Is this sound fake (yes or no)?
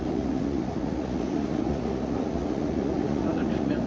yes